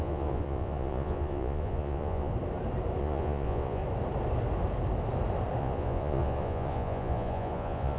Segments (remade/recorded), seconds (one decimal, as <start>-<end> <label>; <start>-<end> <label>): 0.0-2.3 remade; 2.3-3.0 recorded; 3.0-3.8 remade; 3.8-5.6 recorded; 5.6-8.0 remade